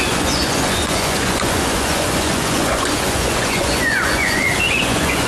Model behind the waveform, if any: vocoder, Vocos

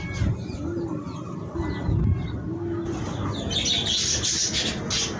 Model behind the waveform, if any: none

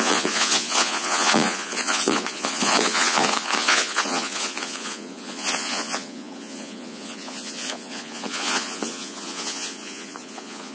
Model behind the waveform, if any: vocoder, Vocos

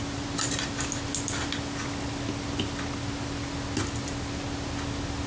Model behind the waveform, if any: none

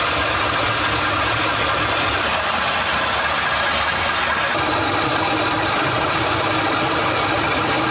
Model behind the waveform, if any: none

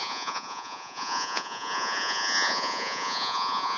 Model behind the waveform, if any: vocoder, Vocos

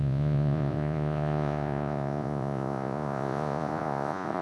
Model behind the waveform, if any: vocoder, Vocos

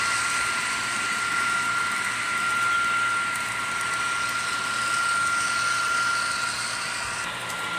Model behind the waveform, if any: none